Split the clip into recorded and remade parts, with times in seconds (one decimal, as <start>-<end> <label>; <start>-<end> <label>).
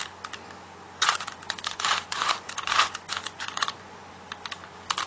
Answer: 0.0-1.0 recorded; 1.0-4.1 remade; 4.1-5.1 recorded